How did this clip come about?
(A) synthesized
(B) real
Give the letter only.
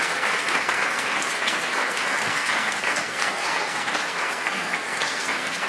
A